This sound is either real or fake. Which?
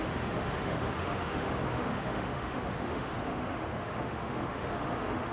fake